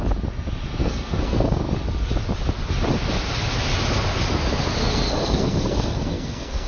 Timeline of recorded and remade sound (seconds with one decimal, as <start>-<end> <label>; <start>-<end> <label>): 0.0-0.8 recorded; 0.8-1.6 remade; 1.6-4.8 recorded; 4.8-6.7 remade

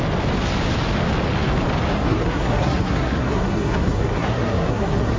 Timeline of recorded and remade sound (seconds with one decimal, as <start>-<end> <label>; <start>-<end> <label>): 0.0-1.9 recorded; 1.9-5.2 remade